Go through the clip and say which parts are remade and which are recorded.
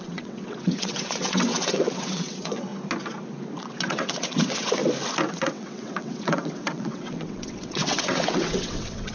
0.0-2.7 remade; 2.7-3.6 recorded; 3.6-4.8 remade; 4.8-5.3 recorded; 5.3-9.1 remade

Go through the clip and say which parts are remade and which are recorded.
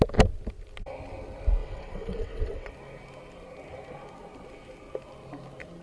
0.0-1.6 recorded; 1.6-2.7 remade; 2.7-5.8 recorded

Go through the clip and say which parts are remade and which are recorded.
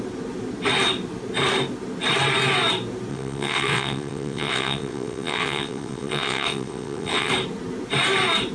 0.0-3.1 recorded; 3.1-7.3 remade; 7.3-8.5 recorded